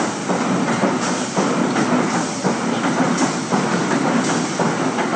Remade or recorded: recorded